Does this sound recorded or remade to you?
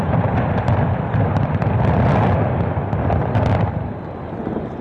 recorded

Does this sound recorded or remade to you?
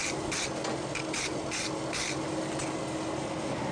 recorded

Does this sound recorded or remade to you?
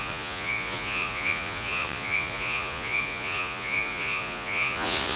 remade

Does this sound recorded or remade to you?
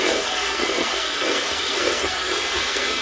remade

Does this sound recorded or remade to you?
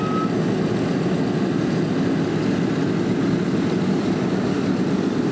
recorded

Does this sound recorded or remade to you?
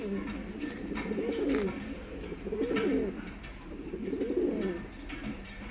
recorded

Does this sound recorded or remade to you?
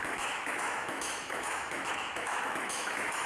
remade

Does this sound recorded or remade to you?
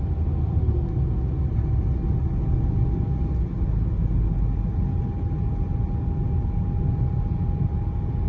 recorded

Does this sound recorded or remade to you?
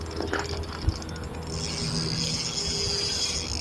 recorded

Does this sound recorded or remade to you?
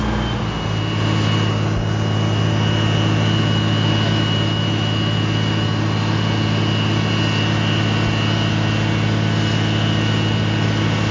recorded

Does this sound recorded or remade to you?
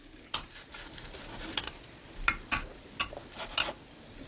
recorded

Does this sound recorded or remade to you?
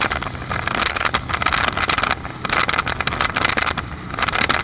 recorded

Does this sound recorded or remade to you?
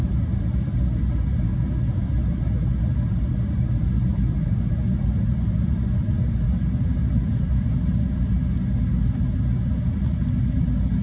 recorded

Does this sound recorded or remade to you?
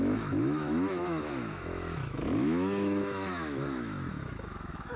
remade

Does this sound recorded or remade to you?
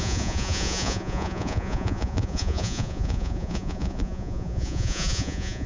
remade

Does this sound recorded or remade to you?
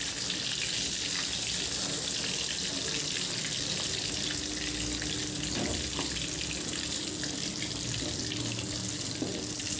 recorded